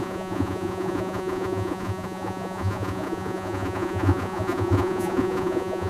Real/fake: fake